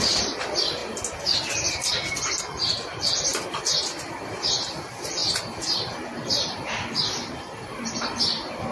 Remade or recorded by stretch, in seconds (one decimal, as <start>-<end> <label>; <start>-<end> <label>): 0.0-0.8 remade; 0.8-2.4 recorded; 2.4-3.3 remade; 3.3-4.3 recorded; 4.3-8.7 remade